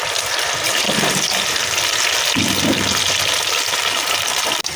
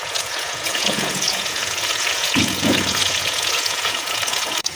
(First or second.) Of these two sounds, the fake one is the second